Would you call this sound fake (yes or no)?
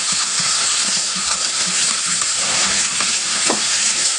yes